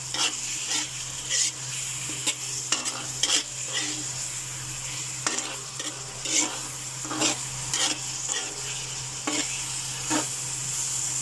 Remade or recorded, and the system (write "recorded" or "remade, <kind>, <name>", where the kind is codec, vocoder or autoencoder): recorded